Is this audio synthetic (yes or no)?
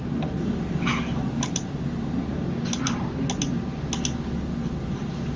no